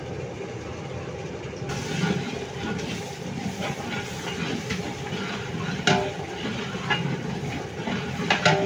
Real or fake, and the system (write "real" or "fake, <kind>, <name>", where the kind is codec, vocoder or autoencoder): real